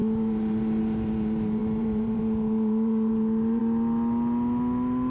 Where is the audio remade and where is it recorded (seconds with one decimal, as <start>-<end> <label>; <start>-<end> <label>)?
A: 0.0-3.6 remade; 3.6-5.1 recorded